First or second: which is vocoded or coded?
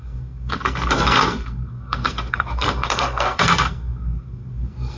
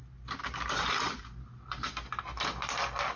first